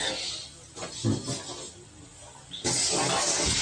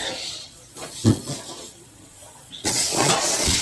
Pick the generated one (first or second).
second